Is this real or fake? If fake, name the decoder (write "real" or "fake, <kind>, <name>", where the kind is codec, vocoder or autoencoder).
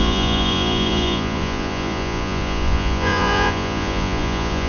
fake, vocoder, Vocos